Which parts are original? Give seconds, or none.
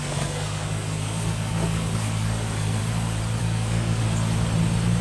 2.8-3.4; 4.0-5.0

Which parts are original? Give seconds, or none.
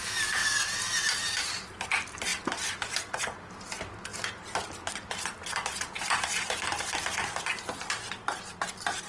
0.0-2.3; 3.1-9.1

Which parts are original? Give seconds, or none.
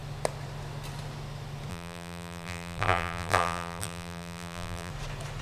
0.0-1.7; 4.9-5.4